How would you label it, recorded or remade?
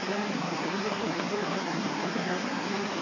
remade